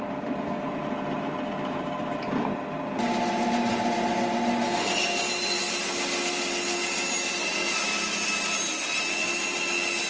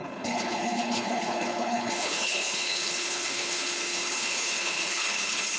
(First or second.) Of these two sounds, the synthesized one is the second